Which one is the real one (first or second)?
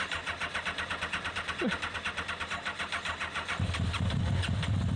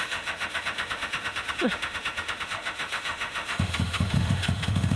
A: first